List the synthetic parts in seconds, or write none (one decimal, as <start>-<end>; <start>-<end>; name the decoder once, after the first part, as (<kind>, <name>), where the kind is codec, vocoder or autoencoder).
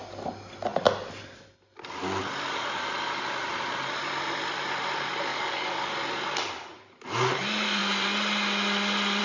5.3-5.9 (codec, DAC)